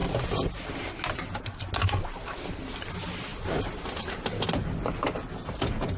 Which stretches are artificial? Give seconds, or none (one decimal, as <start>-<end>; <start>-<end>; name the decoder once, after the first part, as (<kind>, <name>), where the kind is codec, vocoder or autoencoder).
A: none